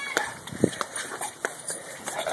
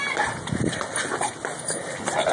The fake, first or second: first